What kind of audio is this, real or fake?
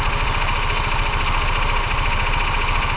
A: real